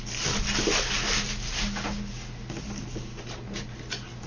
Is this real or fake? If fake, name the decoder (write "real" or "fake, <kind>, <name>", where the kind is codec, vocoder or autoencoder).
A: real